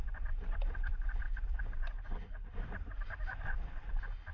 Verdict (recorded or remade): recorded